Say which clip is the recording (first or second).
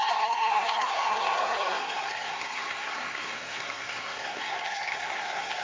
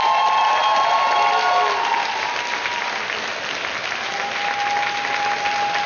second